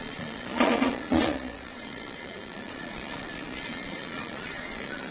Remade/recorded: remade